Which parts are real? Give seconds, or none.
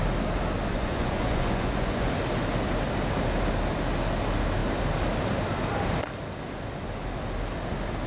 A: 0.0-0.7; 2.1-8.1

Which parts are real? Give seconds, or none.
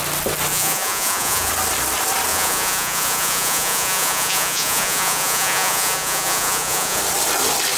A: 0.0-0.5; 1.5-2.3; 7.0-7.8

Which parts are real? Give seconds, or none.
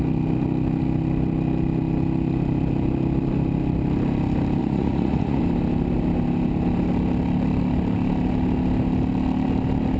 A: 0.0-4.6; 5.4-10.0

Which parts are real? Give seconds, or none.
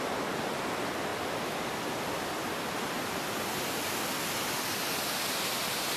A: 0.0-6.0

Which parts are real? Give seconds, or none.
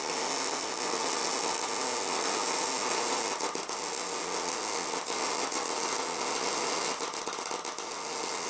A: 0.0-8.5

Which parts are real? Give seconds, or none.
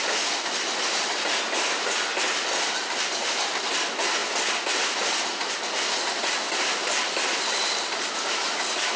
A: 0.0-9.0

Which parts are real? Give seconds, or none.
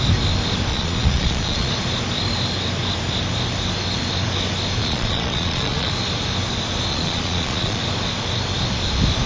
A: 0.0-0.7; 1.7-4.8; 5.9-6.9; 7.8-9.3